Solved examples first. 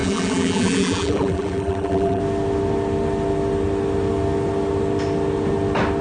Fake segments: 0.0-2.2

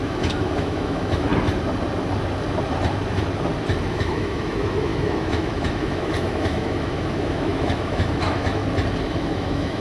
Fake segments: 0.0-1.3; 3.9-8.6; 9.1-9.8

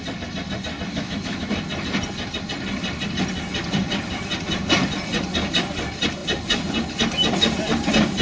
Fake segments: 0.9-1.5

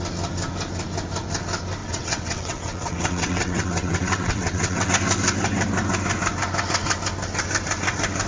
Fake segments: 1.8-4.9

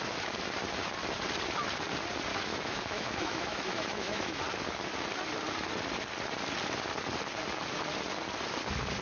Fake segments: 2.3-4.4